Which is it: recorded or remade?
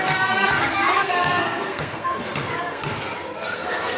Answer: remade